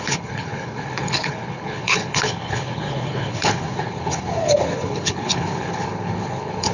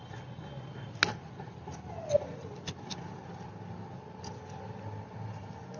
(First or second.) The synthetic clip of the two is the first